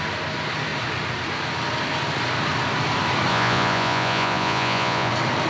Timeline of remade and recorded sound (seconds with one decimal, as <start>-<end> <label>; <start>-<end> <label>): 0.0-3.3 recorded; 3.3-5.1 remade; 5.1-5.5 recorded